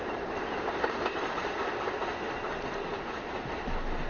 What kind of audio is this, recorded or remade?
recorded